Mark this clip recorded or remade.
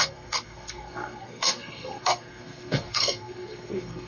remade